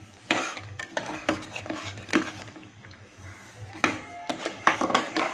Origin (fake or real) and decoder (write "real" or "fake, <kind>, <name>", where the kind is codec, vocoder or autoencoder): fake, codec, DAC